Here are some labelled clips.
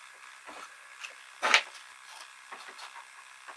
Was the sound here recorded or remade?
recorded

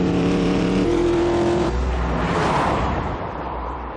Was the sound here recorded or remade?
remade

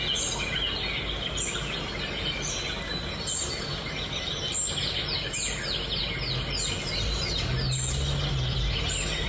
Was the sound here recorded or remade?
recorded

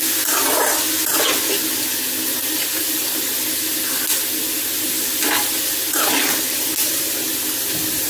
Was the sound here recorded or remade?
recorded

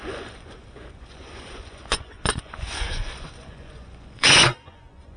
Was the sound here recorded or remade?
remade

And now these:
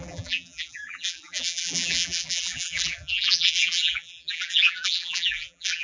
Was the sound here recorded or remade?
remade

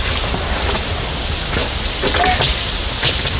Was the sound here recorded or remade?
recorded